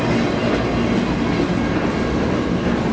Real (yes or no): yes